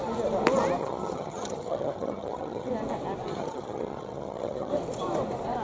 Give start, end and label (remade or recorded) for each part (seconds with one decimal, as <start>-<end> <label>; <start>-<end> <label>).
0.0-0.8 recorded; 0.8-2.7 remade; 2.7-3.3 recorded; 3.3-4.7 remade; 4.7-5.6 recorded